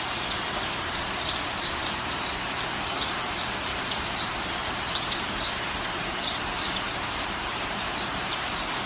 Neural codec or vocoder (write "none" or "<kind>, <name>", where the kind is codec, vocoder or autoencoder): vocoder, BigVGAN v2